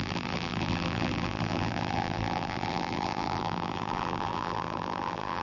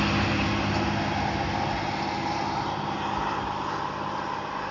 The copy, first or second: first